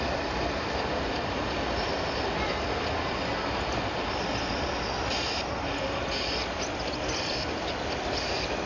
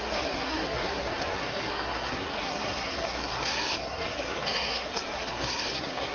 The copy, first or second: second